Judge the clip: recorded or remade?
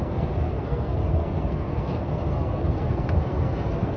remade